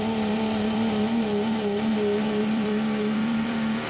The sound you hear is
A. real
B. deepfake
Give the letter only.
B